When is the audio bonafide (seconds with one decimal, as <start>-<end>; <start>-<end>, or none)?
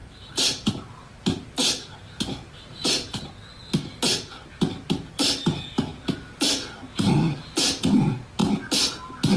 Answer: 3.3-9.4